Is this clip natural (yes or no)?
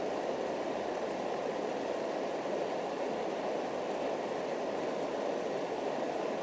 yes